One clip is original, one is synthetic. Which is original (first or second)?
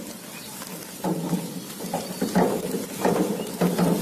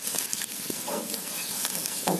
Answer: first